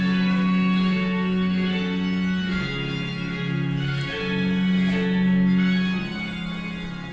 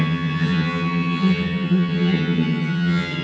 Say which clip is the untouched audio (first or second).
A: first